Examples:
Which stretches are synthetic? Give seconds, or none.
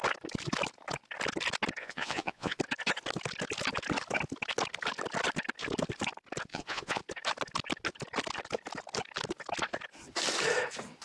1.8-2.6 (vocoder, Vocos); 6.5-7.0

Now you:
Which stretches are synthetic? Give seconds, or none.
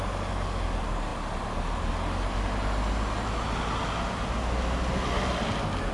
none